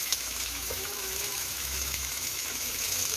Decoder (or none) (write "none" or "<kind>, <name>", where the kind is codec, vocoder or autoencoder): autoencoder, DAC-VAE